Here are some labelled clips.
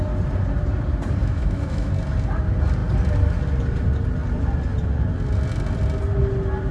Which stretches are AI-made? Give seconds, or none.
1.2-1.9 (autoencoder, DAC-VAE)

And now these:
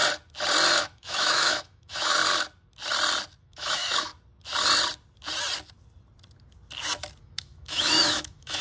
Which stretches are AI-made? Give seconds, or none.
0.8-2.2 (autoencoder, DAC-VAE); 3.4-4.1; 7.2-8.6

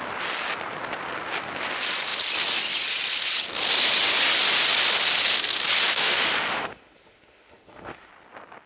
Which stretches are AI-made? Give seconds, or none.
5.9-8.1 (autoencoder, DAC-VAE)

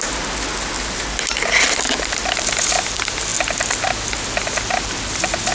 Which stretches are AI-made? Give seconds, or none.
none

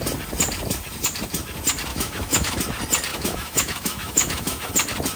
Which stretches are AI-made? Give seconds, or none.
1.9-2.6 (autoencoder, DAC-VAE); 3.1-4.7

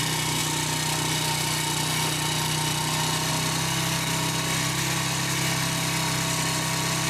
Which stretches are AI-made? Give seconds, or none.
none